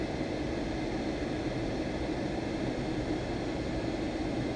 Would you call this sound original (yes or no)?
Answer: yes